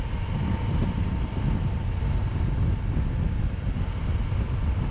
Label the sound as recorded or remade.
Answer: recorded